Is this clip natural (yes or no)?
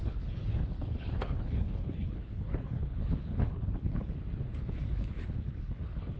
no